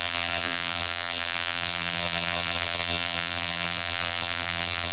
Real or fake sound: fake